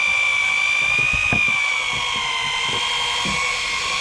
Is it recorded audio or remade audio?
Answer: recorded